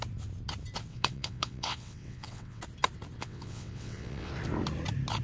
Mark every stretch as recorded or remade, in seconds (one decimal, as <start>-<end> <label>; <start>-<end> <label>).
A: 0.0-0.9 recorded; 0.9-2.6 remade; 2.6-3.2 recorded; 3.2-4.3 remade; 4.3-5.2 recorded